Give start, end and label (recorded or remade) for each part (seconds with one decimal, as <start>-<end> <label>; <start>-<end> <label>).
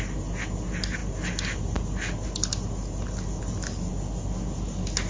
0.0-5.1 recorded